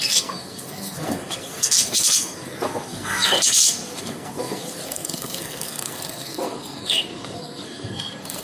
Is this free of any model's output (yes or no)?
no